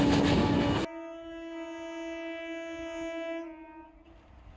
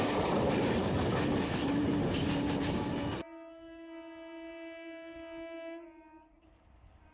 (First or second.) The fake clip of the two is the second